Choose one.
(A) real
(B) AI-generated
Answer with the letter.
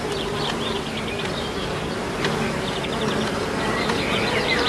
B